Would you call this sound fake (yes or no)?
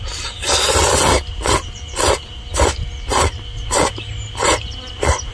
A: no